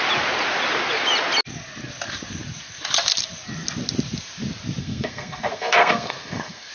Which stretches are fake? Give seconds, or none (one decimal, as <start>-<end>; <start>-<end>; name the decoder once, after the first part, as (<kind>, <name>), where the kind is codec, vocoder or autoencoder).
4.8-6.7 (codec, SNAC)